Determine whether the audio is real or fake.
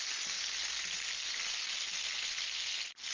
real